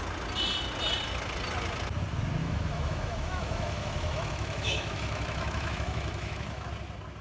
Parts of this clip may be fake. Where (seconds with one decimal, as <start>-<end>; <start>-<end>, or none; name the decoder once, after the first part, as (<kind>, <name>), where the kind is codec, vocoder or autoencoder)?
2.4-6.7 (autoencoder, DAC-VAE)